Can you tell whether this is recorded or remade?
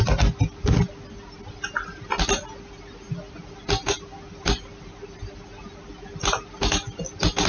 recorded